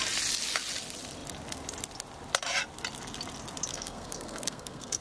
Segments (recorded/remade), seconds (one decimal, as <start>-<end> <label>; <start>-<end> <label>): 0.0-3.7 recorded; 3.7-5.0 remade